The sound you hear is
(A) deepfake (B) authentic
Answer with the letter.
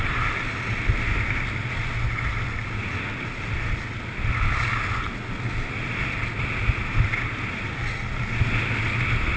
B